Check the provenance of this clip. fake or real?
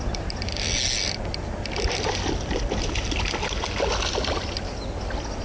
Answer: real